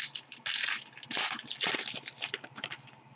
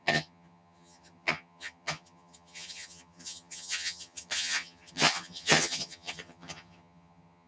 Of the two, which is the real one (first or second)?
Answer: first